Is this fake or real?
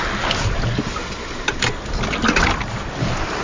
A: real